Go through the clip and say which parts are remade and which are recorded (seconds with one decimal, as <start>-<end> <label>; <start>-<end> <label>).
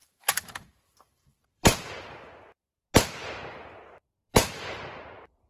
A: 0.0-1.9 remade; 1.9-4.3 recorded; 4.3-5.5 remade